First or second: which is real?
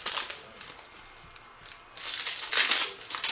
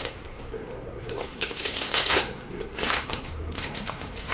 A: first